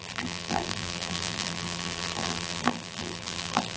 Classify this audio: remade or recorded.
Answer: remade